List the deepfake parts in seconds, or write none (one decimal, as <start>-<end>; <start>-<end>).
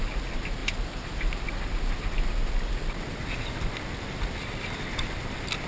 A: none